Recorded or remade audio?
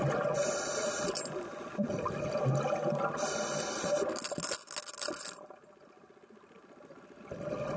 recorded